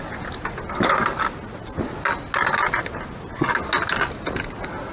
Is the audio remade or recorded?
recorded